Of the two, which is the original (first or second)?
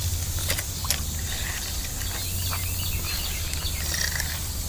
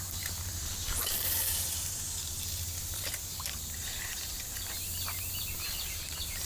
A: first